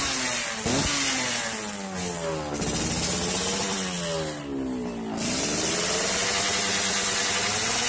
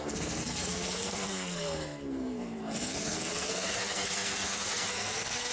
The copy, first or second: second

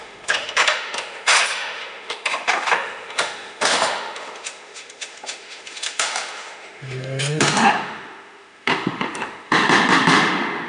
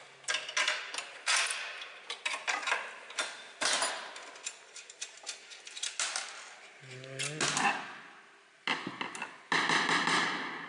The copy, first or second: first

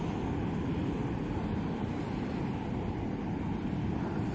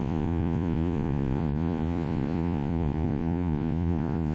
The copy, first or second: second